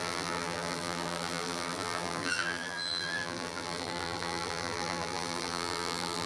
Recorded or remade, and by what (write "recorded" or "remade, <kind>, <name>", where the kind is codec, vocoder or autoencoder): remade, vocoder, BigVGAN v2